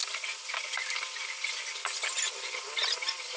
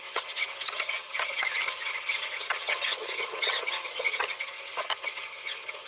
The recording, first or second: first